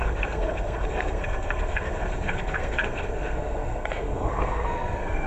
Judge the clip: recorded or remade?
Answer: remade